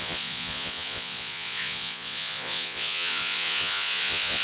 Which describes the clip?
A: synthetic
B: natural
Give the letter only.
A